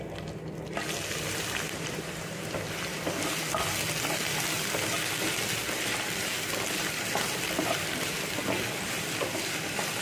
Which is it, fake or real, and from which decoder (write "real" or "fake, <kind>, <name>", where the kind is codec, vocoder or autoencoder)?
real